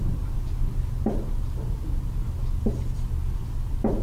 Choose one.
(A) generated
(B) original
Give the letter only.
B